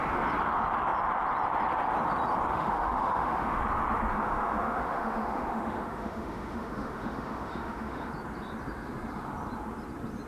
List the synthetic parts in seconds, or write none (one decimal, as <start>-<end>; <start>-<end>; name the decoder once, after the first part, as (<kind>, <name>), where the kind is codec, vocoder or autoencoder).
2.5-3.6 (autoencoder, DAC-VAE); 4.1-8.1